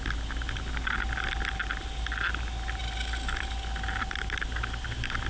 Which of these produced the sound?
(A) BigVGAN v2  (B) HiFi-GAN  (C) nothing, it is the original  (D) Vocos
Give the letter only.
C